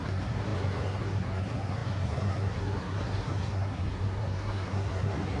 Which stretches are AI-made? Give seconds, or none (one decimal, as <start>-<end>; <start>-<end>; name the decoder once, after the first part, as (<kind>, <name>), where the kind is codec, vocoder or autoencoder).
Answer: 0.0-5.4 (codec, SNAC)